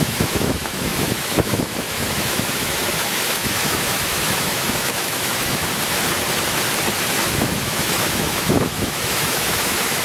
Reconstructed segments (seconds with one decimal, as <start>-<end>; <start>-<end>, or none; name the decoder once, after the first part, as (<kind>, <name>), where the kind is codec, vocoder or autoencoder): 0.0-5.6 (autoencoder, DAC-VAE); 7.3-10.0